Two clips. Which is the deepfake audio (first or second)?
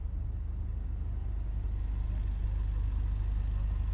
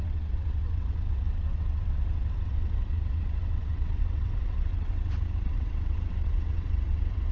second